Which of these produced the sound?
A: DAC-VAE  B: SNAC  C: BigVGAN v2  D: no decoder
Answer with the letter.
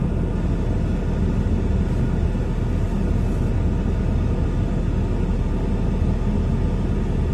D